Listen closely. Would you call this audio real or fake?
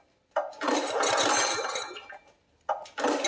real